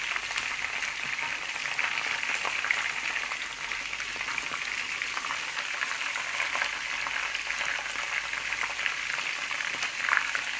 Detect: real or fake real